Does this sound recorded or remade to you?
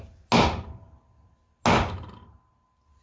recorded